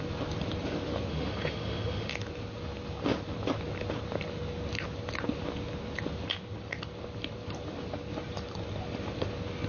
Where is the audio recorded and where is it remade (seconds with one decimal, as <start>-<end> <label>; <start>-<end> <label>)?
0.0-1.1 recorded; 1.1-2.1 remade; 2.1-9.7 recorded